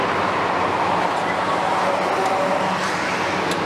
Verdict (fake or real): real